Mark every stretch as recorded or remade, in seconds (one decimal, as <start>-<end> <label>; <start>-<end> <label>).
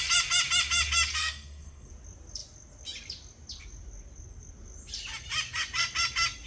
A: 0.0-1.2 recorded; 1.2-1.9 remade; 1.9-6.5 recorded